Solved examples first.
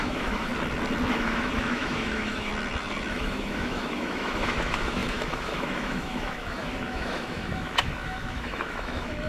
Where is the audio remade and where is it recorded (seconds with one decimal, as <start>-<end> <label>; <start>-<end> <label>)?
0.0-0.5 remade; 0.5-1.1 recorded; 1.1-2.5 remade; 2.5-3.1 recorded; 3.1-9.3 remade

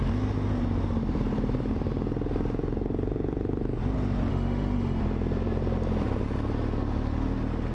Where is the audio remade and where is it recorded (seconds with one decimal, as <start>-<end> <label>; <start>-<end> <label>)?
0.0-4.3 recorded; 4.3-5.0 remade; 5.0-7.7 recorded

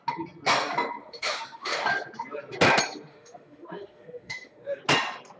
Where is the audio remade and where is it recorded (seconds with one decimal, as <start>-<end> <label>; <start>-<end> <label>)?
0.0-1.0 recorded; 1.0-1.8 remade; 1.8-3.1 recorded; 3.1-4.8 remade; 4.8-5.4 recorded

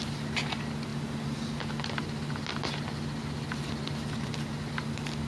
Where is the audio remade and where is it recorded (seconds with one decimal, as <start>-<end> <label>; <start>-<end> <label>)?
0.0-5.3 recorded

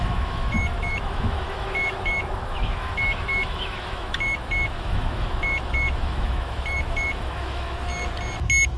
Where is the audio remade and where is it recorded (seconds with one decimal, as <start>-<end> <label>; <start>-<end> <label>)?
0.0-7.9 remade; 7.9-8.8 recorded

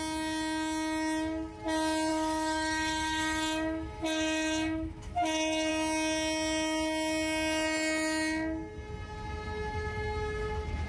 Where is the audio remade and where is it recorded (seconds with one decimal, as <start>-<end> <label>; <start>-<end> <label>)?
0.0-2.1 recorded; 2.1-5.7 remade; 5.7-10.9 recorded